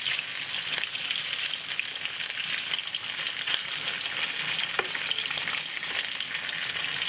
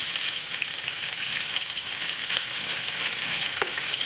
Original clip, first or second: first